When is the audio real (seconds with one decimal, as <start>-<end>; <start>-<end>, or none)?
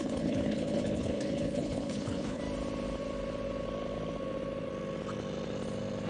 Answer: 2.4-6.1